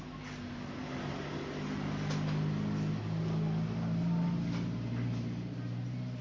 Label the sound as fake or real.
real